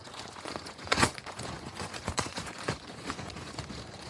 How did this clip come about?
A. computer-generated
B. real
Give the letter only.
A